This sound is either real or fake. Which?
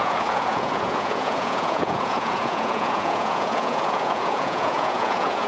fake